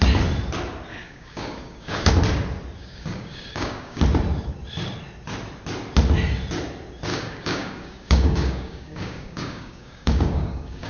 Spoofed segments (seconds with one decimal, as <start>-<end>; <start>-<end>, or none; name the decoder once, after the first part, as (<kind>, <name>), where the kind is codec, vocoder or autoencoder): 0.9-2.1 (codec, DAC); 2.8-4.0; 7.1-10.9